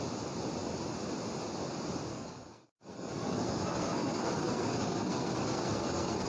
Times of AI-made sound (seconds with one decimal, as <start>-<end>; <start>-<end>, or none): 2.1-6.3